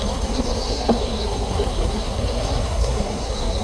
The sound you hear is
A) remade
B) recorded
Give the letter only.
A